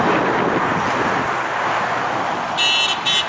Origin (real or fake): real